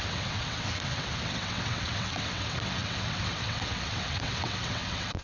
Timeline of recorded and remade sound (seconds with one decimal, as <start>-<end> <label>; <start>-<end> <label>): 0.0-5.2 remade